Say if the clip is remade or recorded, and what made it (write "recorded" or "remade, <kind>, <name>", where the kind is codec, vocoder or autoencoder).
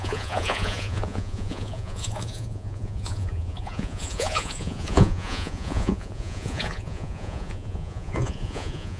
remade, vocoder, Vocos